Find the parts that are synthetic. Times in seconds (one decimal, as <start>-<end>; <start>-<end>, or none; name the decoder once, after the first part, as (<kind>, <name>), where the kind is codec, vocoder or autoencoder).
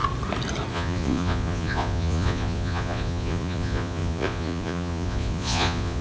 0.7-6.0 (vocoder, Vocos)